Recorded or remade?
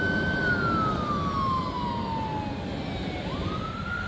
recorded